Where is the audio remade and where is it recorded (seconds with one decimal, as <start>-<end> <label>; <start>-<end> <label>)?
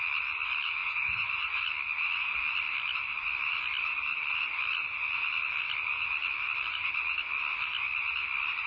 0.0-0.8 recorded; 0.8-1.6 remade; 1.6-8.7 recorded